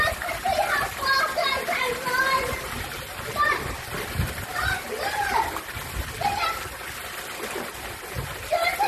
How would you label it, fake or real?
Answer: real